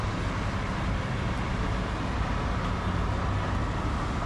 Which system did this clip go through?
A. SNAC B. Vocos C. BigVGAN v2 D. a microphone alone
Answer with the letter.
D